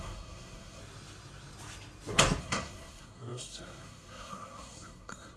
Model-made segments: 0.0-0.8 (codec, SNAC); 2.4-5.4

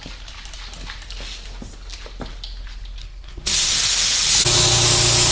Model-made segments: 3.0-3.7 (codec, SNAC)